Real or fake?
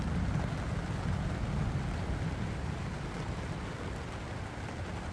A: real